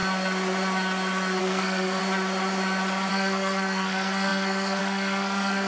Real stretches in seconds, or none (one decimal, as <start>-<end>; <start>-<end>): 0.0-1.4; 2.0-3.1